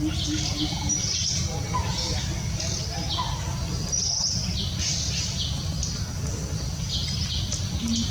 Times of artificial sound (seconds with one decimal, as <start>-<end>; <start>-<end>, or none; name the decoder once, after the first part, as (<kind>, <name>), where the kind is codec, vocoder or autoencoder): none